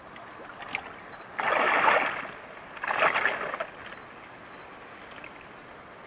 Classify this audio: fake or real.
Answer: real